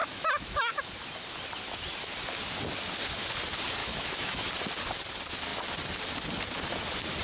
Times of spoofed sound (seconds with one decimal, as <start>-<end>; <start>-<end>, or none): 0.0-0.9; 3.8-4.5